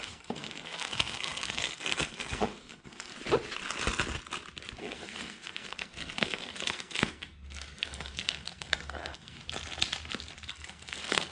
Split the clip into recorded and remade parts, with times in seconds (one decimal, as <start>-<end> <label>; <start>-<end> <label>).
0.0-3.1 remade; 3.1-4.8 recorded; 4.8-9.4 remade; 9.4-10.5 recorded; 10.5-11.3 remade